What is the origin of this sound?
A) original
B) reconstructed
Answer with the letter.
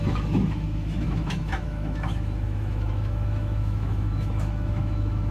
B